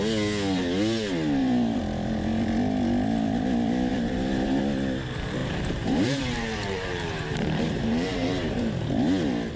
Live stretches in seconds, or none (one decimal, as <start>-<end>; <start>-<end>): 0.0-1.4; 2.4-3.9; 4.6-5.4; 8.9-9.6